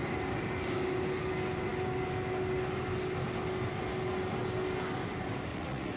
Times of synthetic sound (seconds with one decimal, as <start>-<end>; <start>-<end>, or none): 5.5-6.0